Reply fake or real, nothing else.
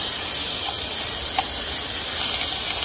real